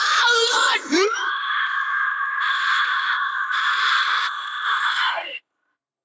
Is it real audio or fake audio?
real